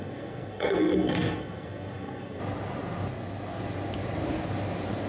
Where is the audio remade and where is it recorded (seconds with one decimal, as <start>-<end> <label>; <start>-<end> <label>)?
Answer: 0.0-2.4 remade; 2.4-5.1 recorded